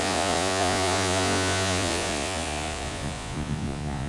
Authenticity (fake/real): fake